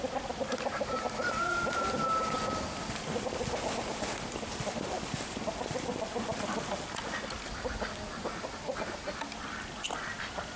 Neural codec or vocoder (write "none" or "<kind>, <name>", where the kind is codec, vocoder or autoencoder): none